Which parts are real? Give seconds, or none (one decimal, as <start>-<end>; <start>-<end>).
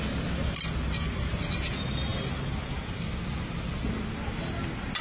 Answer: 0.0-5.0